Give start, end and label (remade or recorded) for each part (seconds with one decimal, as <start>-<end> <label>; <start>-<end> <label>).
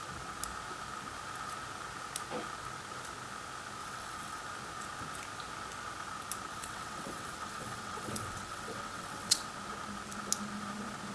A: 0.0-3.8 recorded; 3.8-4.4 remade; 4.4-6.5 recorded; 6.5-9.5 remade; 9.5-11.1 recorded